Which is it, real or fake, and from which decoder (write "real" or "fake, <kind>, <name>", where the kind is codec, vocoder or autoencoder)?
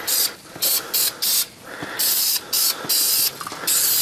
real